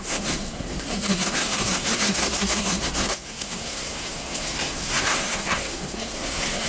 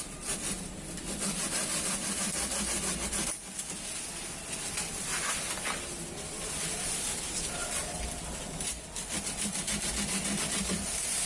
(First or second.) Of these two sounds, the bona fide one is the second